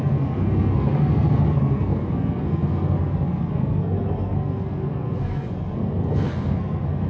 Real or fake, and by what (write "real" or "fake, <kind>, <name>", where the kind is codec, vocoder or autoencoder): fake, codec, SNAC